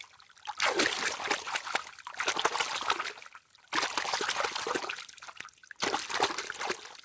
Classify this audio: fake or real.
real